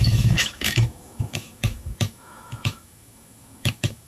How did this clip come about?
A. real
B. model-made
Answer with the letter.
B